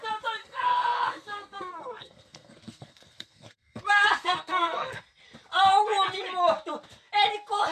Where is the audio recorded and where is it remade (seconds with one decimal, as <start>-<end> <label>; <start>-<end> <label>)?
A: 0.0-0.4 recorded; 0.4-5.0 remade; 5.0-7.7 recorded